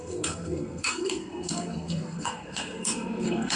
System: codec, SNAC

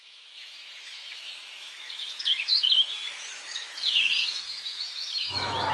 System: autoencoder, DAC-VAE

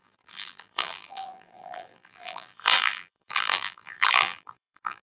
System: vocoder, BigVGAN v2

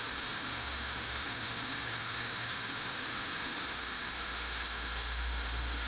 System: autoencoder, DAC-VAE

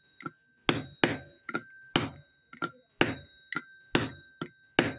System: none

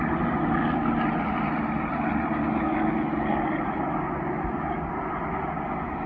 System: none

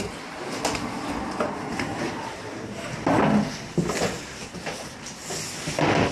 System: none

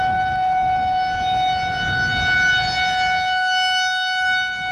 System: none